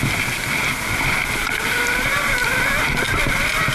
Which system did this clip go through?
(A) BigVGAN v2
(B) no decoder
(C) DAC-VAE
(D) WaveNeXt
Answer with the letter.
B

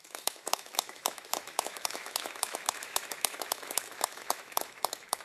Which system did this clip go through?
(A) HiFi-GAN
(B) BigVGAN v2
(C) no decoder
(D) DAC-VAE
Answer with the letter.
D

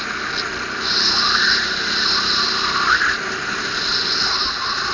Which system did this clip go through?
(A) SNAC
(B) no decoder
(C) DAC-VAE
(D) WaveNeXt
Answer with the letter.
B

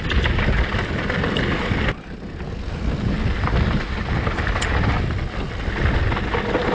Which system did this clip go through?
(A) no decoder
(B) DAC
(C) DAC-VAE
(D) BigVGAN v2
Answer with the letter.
A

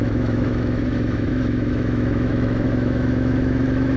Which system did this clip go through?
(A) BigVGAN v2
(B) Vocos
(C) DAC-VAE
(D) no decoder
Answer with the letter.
C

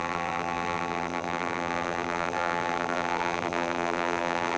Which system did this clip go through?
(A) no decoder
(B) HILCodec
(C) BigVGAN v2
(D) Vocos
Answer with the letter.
C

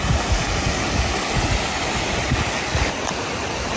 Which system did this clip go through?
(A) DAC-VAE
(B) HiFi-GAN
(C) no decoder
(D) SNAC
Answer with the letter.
C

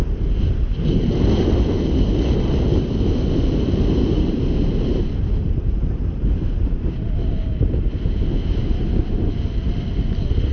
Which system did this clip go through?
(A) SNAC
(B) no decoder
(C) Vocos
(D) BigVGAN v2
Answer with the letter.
B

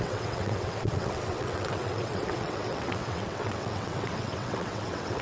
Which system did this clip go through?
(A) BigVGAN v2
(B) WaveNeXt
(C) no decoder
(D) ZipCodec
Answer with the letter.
B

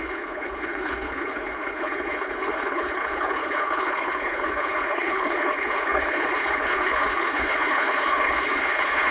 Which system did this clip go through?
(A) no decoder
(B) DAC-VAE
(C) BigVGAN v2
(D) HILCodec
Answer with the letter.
D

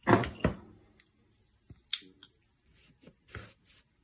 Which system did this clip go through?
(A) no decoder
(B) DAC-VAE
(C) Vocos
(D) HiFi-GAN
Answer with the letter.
A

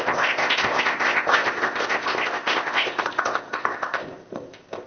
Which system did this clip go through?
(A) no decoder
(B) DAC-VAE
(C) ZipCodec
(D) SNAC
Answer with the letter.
C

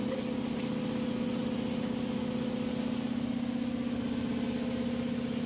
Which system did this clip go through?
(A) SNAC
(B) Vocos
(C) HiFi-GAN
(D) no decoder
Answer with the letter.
D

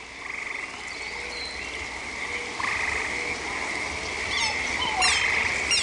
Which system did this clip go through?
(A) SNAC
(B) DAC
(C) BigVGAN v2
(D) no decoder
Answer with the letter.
D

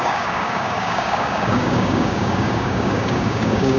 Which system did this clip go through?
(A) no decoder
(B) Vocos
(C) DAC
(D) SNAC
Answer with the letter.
C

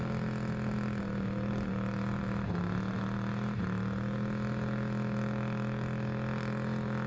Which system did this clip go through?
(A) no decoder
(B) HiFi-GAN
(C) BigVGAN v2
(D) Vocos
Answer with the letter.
A